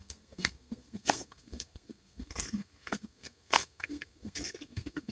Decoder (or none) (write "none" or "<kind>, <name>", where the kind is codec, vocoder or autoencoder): codec, SNAC